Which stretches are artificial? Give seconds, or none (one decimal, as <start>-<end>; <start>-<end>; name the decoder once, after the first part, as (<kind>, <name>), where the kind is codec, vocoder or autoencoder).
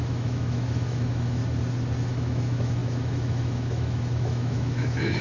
0.0-1.4 (autoencoder, DAC-VAE); 2.1-5.2